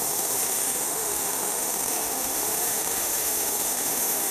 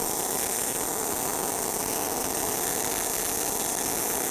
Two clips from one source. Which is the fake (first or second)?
first